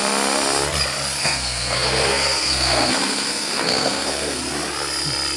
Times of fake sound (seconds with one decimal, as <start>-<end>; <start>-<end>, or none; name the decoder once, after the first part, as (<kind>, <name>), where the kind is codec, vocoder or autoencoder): 1.2-4.4 (codec, SNAC)